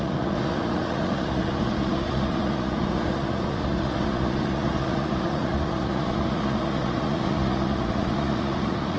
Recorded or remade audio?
remade